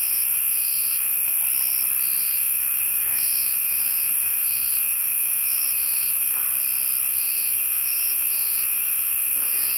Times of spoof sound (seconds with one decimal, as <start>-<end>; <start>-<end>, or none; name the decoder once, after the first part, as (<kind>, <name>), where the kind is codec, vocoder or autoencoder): 0.0-1.4 (autoencoder, DAC-VAE); 2.2-6.4; 7.1-9.8